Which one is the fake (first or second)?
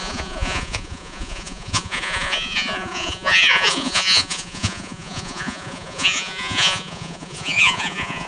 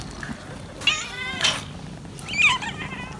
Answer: first